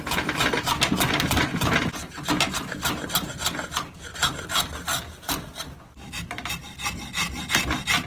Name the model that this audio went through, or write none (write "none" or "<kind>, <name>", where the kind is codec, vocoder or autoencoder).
none